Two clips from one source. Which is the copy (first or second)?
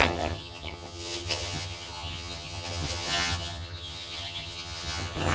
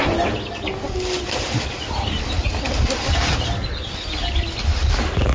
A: first